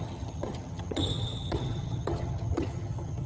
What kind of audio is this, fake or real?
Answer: fake